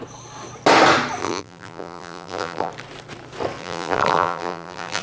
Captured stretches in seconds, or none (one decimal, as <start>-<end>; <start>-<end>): 0.0-1.2; 2.7-3.6